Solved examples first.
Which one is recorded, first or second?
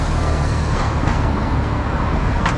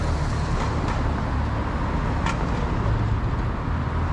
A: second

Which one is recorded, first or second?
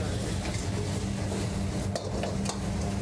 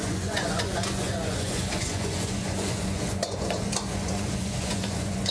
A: first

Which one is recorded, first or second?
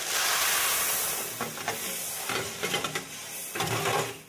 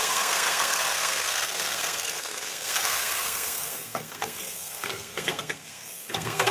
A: first